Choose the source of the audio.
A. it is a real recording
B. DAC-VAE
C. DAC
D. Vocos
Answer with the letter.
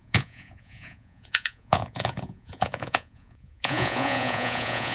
D